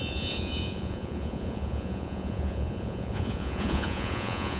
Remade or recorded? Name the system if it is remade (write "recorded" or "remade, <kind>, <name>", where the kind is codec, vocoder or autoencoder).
remade, vocoder, Vocos